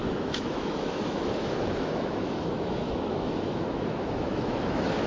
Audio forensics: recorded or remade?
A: remade